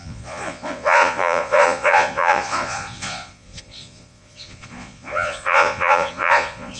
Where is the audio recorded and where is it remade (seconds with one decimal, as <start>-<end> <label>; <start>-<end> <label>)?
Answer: 0.0-6.8 remade